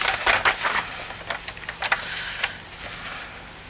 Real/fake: real